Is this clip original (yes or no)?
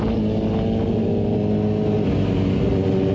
yes